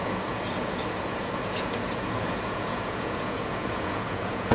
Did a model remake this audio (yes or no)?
yes